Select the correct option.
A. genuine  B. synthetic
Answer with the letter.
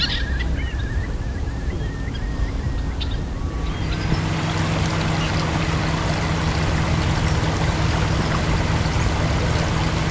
A